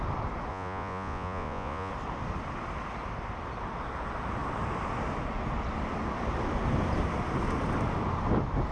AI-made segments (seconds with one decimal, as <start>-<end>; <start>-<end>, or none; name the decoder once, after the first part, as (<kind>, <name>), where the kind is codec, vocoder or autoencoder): 0.5-1.9 (vocoder, Vocos)